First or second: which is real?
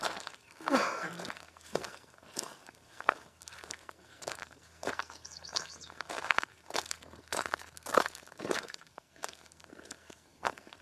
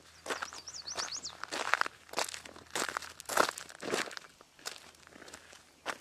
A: second